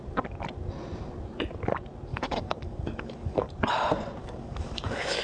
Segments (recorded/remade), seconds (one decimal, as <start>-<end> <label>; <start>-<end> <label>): 0.0-2.1 recorded; 2.1-3.5 remade; 3.5-4.2 recorded; 4.2-5.2 remade